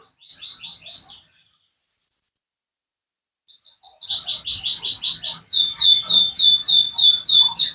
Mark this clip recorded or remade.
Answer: recorded